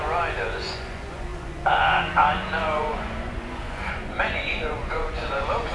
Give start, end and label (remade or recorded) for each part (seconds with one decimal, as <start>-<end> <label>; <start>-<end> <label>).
0.0-5.7 remade